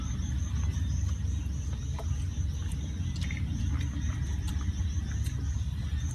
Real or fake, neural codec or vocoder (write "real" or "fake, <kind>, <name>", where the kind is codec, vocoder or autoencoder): real